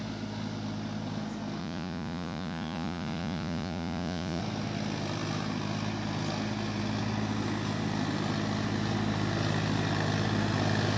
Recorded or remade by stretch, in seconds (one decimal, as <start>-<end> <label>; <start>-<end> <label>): 0.0-1.6 recorded; 1.6-4.4 remade; 4.4-11.0 recorded